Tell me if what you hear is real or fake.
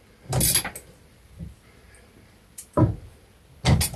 real